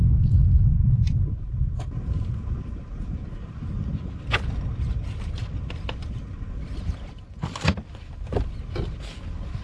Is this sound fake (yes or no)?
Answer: no